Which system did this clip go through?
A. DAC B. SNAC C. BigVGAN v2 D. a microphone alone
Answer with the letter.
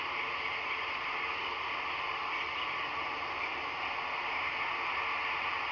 D